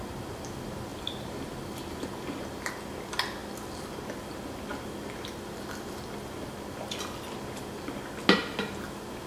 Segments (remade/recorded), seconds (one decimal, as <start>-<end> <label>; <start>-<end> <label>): 0.0-0.9 recorded; 0.9-2.7 remade; 2.7-9.3 recorded